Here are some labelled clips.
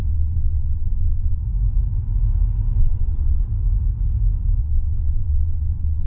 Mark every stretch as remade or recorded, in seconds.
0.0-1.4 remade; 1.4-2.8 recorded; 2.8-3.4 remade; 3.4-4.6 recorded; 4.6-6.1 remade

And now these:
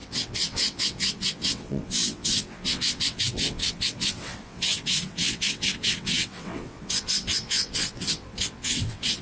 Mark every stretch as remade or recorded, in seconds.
0.0-9.2 remade